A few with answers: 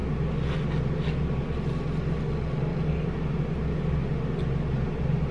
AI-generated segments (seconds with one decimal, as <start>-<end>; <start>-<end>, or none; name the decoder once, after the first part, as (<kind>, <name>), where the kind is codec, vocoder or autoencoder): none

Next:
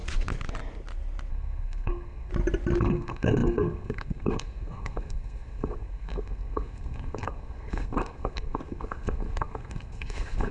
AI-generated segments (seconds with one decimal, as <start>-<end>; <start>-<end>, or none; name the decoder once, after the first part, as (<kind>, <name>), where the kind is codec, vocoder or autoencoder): 1.3-2.3 (codec, SNAC); 2.8-10.5

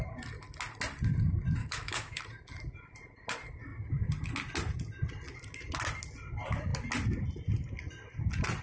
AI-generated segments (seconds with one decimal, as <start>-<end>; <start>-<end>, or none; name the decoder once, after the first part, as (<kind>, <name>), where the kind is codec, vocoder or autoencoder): 1.6-2.2 (autoencoder, DAC-VAE)